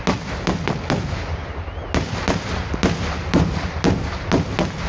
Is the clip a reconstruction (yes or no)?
no